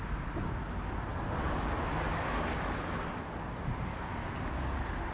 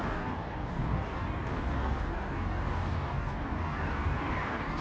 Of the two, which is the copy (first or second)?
second